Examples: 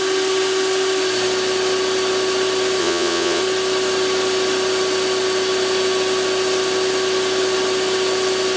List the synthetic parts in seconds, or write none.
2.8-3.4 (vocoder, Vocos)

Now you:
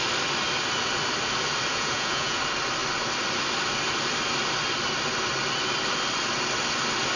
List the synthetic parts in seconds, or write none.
1.7-2.4 (vocoder, Vocos)